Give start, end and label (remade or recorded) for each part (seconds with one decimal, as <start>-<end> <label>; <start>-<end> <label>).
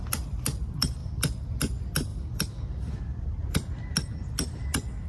0.0-5.1 recorded